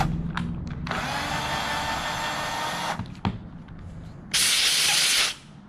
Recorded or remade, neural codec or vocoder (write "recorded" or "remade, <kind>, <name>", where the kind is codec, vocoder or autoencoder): recorded